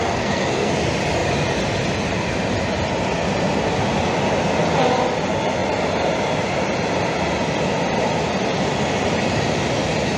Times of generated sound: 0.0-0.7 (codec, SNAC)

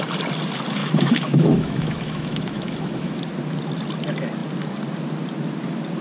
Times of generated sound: 0.8-3.2 (autoencoder, DAC-VAE)

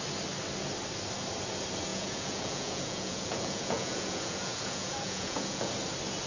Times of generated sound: 1.9-5.7 (vocoder, Vocos)

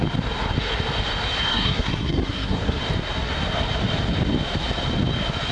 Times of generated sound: 1.5-2.8 (codec, SNAC)

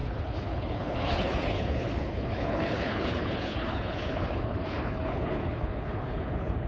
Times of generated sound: 0.0-6.7 (codec, HILCodec)